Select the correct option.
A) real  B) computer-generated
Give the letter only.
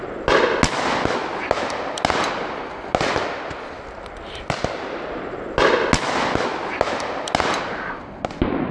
A